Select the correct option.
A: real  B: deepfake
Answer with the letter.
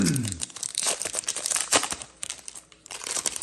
B